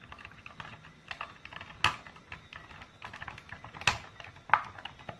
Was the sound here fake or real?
real